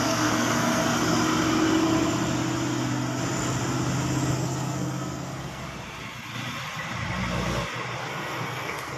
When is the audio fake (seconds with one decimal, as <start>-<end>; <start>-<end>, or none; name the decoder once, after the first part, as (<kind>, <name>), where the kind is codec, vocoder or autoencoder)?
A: 0.0-0.8 (codec, SNAC); 4.3-5.6; 8.0-9.0